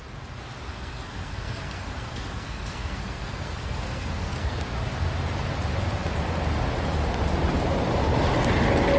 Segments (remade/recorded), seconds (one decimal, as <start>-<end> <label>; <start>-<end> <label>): 0.0-0.7 recorded; 0.7-4.6 remade; 4.6-9.0 recorded